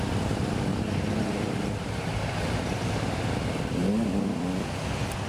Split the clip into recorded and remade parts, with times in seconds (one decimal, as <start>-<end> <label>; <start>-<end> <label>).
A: 0.0-0.7 recorded; 0.7-3.2 remade; 3.2-5.3 recorded